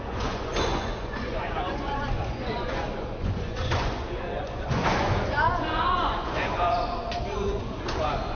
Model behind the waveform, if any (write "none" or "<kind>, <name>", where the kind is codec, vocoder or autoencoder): vocoder, Vocos